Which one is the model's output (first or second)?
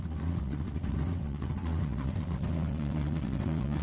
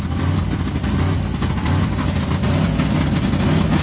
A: first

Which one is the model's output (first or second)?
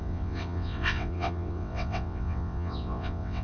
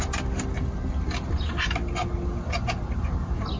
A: first